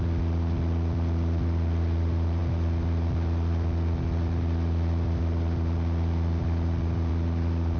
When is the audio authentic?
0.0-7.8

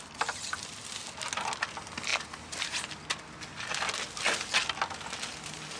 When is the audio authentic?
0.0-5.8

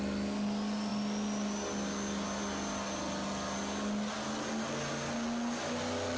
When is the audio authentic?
0.0-6.2